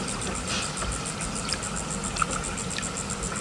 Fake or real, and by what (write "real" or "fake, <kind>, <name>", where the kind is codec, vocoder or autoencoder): real